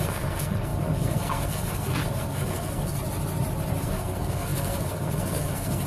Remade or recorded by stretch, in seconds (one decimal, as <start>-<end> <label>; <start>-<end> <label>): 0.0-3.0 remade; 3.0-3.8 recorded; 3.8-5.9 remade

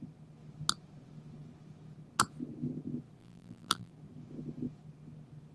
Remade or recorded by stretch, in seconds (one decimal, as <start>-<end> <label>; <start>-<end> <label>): 0.0-3.2 recorded; 3.2-3.9 remade; 3.9-5.5 recorded

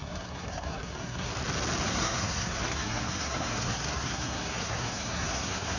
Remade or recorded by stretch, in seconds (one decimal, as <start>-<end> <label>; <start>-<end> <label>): 0.0-1.3 remade; 1.3-1.9 recorded; 1.9-5.8 remade

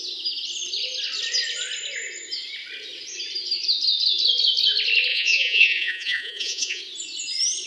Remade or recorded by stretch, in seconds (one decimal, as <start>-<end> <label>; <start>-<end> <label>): 0.0-5.1 recorded; 5.1-6.8 remade; 6.8-7.7 recorded

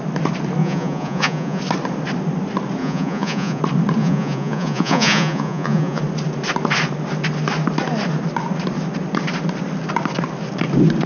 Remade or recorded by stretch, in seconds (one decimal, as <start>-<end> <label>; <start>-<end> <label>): 0.0-0.6 recorded; 0.6-1.6 remade; 1.6-2.8 recorded; 2.8-3.6 remade; 3.6-4.0 recorded; 4.0-6.0 remade; 6.0-11.1 recorded

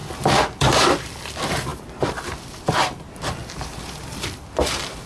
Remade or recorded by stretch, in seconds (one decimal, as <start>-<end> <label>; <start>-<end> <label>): 0.0-5.1 remade